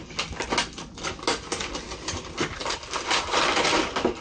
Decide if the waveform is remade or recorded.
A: recorded